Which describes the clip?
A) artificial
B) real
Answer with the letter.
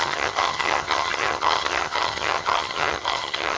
A